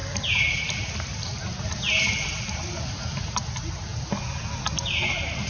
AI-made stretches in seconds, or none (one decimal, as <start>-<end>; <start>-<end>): none